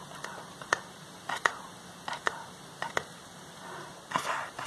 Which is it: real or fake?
fake